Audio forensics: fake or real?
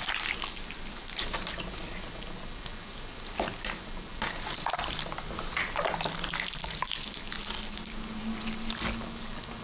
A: real